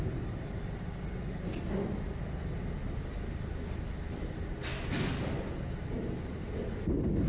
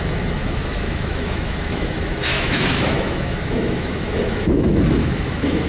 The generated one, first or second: second